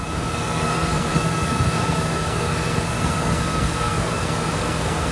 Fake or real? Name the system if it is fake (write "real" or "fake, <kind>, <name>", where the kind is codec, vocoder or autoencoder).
fake, codec, SNAC